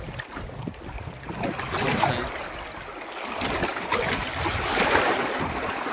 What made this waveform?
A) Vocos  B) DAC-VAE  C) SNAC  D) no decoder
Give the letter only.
D